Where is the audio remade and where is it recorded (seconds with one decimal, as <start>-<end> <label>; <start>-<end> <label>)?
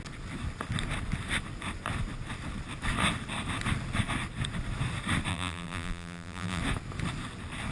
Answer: 0.0-5.3 recorded; 5.3-6.6 remade; 6.6-7.7 recorded